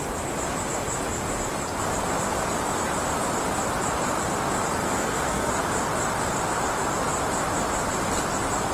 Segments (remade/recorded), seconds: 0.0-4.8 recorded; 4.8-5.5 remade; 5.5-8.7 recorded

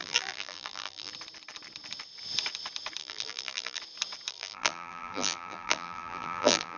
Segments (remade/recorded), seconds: 0.0-1.1 remade; 1.1-3.0 recorded; 3.0-3.8 remade; 3.8-4.3 recorded; 4.3-6.8 remade

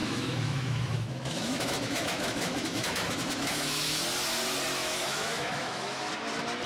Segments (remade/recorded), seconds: 0.0-4.0 remade; 4.0-4.8 recorded; 4.8-6.1 remade; 6.1-6.7 recorded

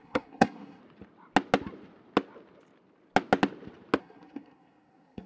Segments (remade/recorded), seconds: 0.0-0.8 remade; 0.8-4.0 recorded; 4.0-5.3 remade

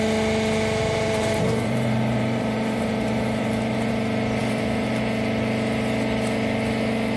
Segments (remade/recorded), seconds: 0.0-0.8 recorded; 0.8-3.9 remade; 3.9-4.4 recorded; 4.4-5.0 remade; 5.0-7.2 recorded

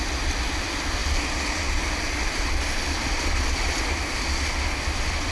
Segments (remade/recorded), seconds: 0.0-5.3 recorded